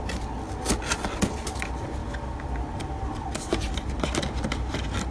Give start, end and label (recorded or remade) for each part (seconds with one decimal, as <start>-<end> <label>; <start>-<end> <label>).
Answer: 0.0-5.1 recorded